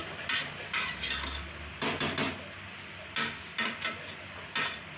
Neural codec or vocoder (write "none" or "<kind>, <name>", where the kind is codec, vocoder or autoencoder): none